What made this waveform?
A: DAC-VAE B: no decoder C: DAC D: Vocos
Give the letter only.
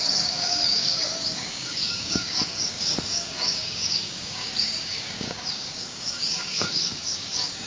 C